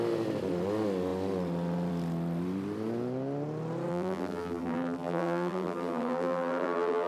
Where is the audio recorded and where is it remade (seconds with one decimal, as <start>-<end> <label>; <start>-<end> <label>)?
0.0-3.9 recorded; 3.9-7.1 remade